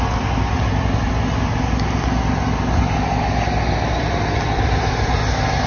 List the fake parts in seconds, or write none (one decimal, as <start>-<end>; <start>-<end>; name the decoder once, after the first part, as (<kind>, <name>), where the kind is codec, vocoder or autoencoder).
none